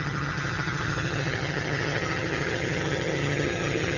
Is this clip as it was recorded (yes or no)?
no